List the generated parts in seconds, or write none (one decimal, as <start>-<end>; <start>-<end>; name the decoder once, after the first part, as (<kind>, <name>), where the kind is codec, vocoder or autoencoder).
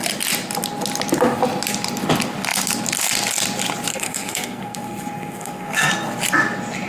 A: 3.9-5.9 (codec, SNAC)